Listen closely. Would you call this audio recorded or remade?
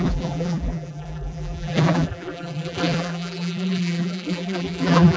remade